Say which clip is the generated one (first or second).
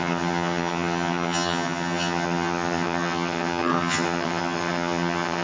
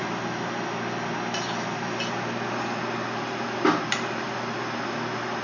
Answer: first